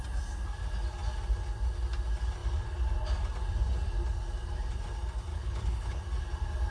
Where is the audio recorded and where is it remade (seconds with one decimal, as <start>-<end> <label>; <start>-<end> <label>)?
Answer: 0.0-5.3 recorded; 5.3-6.0 remade; 6.0-6.7 recorded